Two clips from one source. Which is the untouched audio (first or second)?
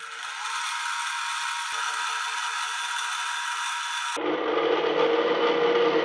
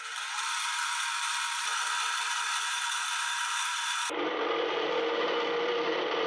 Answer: first